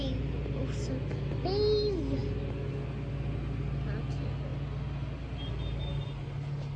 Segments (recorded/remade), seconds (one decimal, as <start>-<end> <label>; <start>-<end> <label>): 0.0-6.8 recorded

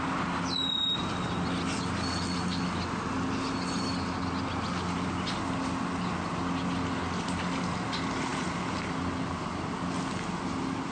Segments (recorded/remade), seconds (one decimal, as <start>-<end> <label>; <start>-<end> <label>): 0.0-10.9 recorded

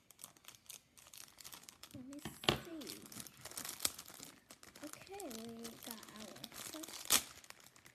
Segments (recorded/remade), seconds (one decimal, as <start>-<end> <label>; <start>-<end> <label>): 0.0-7.9 recorded